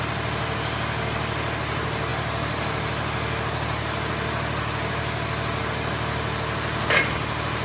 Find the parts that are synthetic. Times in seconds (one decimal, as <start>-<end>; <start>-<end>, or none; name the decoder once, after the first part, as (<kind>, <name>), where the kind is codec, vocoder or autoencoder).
none